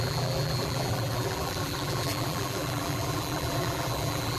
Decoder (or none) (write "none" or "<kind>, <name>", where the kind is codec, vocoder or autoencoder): vocoder, BigVGAN v2